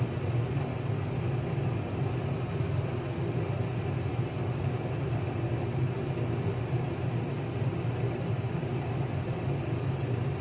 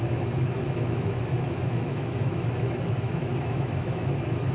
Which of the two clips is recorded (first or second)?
first